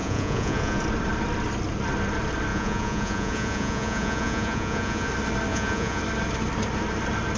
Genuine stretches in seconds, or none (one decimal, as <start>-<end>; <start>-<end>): 0.8-2.5; 5.1-5.5; 6.0-7.4